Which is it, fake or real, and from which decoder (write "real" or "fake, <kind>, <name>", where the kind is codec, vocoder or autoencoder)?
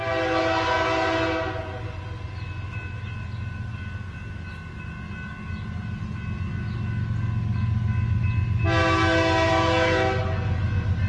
real